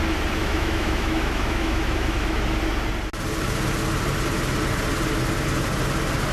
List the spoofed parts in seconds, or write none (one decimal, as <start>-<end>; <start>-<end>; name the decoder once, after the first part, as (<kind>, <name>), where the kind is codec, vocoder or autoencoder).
0.4-2.4 (autoencoder, DAC-VAE)